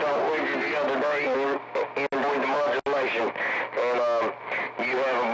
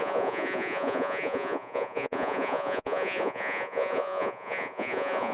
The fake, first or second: second